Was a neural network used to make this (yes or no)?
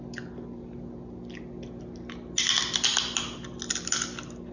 no